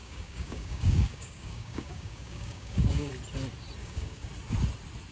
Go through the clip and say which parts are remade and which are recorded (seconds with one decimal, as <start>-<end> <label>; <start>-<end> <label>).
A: 0.0-3.1 remade; 3.1-3.8 recorded; 3.8-4.3 remade; 4.3-5.1 recorded